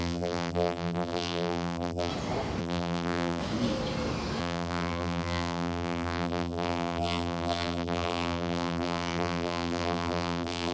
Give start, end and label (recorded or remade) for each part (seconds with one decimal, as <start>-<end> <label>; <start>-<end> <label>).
0.0-2.1 remade; 2.1-2.6 recorded; 2.6-3.4 remade; 3.4-4.4 recorded; 4.4-10.7 remade